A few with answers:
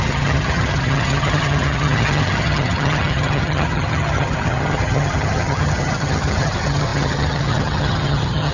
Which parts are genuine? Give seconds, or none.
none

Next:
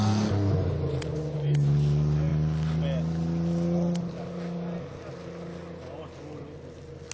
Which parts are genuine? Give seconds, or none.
0.0-7.1

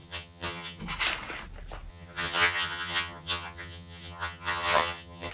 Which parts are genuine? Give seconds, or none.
0.8-1.9

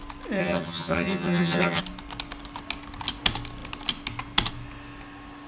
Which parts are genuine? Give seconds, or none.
0.0-0.4; 1.8-5.5

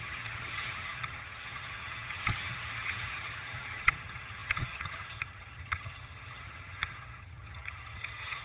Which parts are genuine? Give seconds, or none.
none

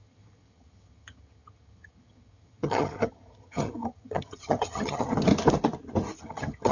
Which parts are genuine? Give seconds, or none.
5.3-6.2